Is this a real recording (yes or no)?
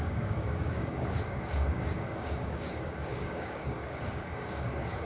no